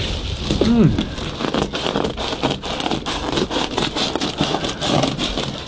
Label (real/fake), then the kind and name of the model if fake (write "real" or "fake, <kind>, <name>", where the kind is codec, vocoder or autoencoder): real